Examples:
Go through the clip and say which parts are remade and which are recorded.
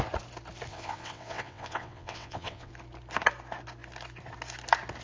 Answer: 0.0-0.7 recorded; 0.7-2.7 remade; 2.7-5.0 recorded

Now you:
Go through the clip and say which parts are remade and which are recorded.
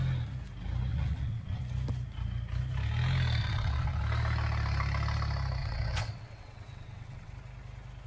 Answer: 0.0-0.9 recorded; 0.9-1.6 remade; 1.6-3.4 recorded; 3.4-4.0 remade; 4.0-5.6 recorded; 5.6-7.3 remade; 7.3-8.1 recorded